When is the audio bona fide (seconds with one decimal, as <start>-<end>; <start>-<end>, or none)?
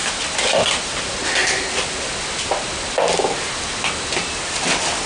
0.0-5.1